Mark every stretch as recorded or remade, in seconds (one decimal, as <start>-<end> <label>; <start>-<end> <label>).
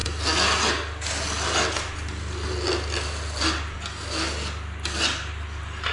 0.0-5.9 recorded